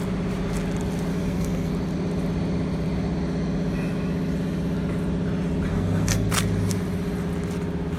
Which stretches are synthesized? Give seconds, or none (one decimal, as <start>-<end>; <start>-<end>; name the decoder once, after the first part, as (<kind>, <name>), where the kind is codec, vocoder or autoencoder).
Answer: 1.1-1.7 (codec, SNAC); 5.7-6.3